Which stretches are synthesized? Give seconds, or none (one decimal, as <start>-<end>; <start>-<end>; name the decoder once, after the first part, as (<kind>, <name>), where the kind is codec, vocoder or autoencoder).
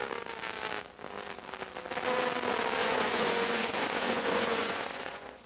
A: 2.8-5.5 (vocoder, Vocos)